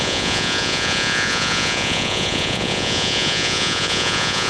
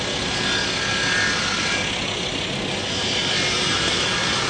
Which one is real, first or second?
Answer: second